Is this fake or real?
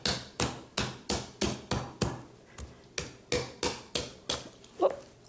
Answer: real